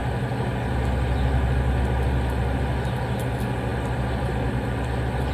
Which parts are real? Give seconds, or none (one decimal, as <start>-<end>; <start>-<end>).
0.0-5.3